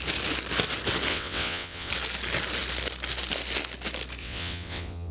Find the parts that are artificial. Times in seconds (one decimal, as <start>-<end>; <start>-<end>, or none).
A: 1.1-1.9; 4.2-5.1